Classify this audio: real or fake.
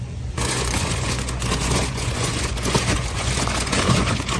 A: fake